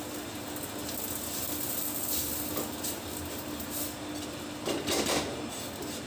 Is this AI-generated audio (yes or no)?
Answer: no